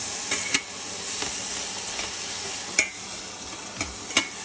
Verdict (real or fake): real